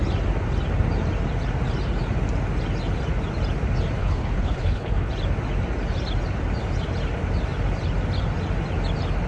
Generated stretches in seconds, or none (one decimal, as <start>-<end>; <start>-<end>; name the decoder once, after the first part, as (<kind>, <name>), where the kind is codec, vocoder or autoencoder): 4.0-5.1 (codec, HILCodec)